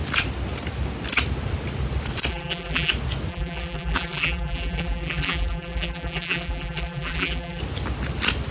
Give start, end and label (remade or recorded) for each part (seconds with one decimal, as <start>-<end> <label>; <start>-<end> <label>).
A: 0.0-2.3 recorded; 2.3-2.9 remade; 2.9-3.3 recorded; 3.3-7.6 remade; 7.6-8.5 recorded